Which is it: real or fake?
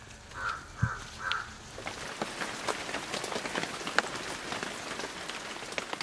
real